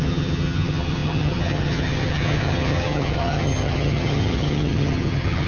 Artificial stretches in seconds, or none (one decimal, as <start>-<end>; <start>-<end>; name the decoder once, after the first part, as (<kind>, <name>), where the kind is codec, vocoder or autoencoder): 0.0-5.5 (vocoder, HiFi-GAN)